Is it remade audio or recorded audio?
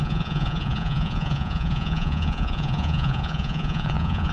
remade